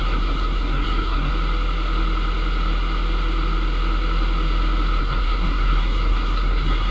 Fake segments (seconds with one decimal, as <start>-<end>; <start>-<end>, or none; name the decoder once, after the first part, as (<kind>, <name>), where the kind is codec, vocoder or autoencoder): 0.0-1.3 (codec, SNAC); 5.0-6.9